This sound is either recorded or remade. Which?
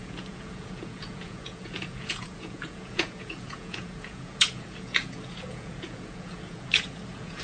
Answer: remade